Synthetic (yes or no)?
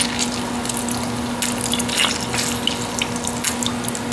no